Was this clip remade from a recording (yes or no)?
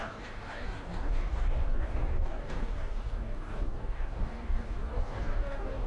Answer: yes